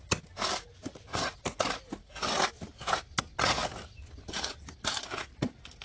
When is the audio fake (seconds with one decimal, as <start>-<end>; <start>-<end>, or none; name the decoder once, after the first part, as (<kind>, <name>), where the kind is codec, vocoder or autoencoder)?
none